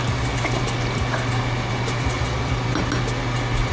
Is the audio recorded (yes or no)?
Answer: yes